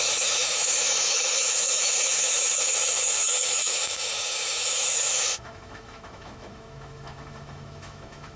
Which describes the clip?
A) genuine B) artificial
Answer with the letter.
B